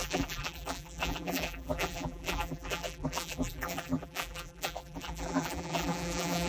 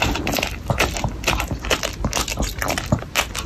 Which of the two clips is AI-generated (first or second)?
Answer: first